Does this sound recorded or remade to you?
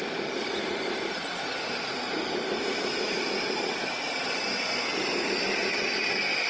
remade